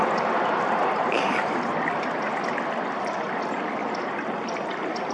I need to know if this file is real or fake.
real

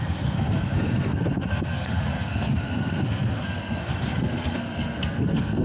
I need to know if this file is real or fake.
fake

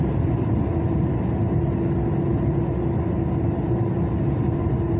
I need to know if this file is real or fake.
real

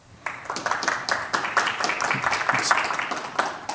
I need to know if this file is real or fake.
real